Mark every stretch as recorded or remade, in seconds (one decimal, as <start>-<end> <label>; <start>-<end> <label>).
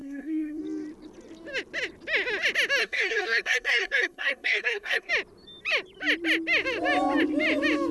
0.0-0.6 remade; 0.6-2.8 recorded; 2.8-5.1 remade; 5.1-7.9 recorded